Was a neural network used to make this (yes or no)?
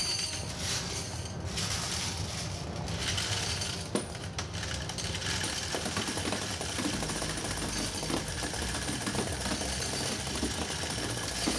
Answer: no